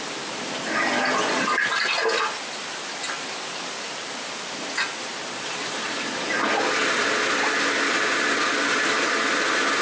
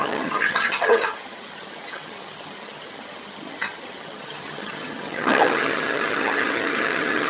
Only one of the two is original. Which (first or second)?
first